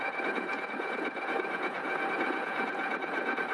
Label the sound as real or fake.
fake